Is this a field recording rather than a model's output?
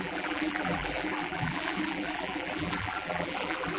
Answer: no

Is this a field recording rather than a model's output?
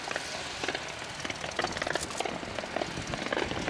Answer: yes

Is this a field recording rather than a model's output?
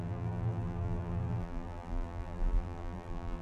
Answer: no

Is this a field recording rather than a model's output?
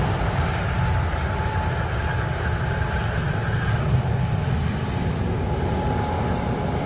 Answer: yes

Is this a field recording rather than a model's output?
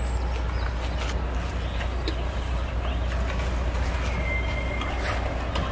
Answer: yes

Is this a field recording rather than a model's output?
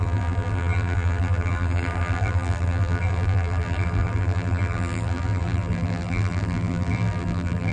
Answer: no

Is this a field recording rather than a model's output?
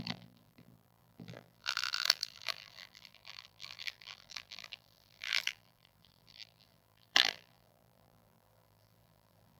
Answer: no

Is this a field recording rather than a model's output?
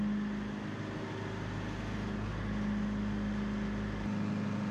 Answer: yes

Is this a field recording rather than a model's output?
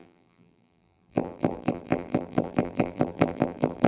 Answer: no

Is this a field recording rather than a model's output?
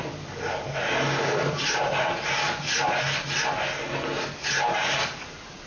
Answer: yes